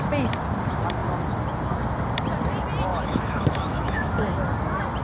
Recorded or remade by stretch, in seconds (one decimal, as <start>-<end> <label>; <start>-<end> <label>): 0.0-2.9 recorded; 2.9-4.1 remade; 4.1-5.0 recorded